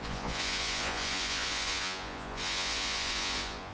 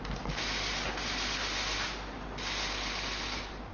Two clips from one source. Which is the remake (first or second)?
first